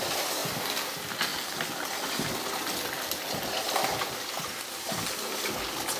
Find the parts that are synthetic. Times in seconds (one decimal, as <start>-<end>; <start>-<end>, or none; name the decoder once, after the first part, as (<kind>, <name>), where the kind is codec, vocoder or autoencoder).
none